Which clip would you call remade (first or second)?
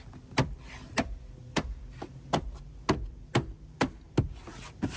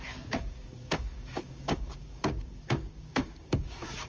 second